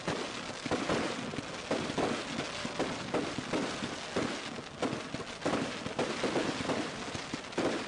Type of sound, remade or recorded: recorded